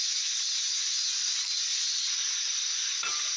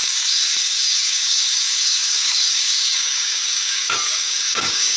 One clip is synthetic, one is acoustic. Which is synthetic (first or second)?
second